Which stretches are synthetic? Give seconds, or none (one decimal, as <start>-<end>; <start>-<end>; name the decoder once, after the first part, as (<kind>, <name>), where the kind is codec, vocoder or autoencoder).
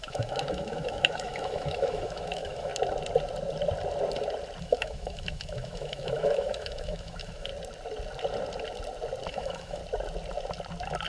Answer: 0.0-2.7 (autoencoder, DAC-VAE); 4.6-7.5; 9.3-9.8